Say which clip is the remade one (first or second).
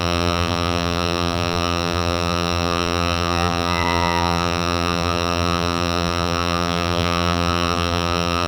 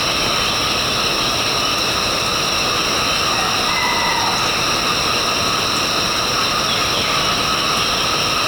first